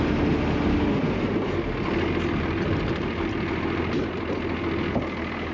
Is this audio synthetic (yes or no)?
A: no